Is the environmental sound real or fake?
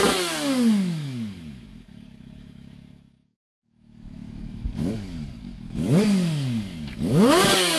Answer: fake